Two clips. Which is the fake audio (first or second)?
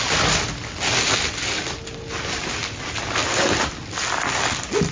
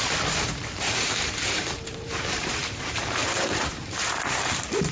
second